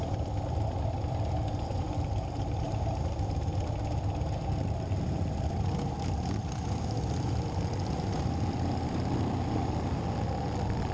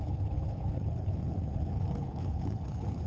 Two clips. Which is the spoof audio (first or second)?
second